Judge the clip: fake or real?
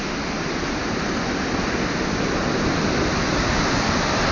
real